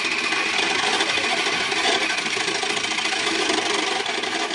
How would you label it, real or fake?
real